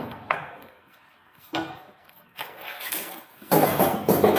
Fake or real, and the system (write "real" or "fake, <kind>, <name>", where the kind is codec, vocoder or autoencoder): fake, codec, SNAC